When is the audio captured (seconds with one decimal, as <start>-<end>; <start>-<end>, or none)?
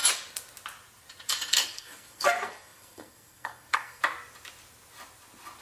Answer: 0.0-1.3; 4.0-5.6